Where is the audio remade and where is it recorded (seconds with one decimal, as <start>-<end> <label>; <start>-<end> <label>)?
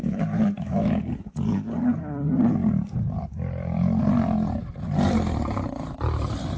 0.0-1.0 remade; 1.0-6.6 recorded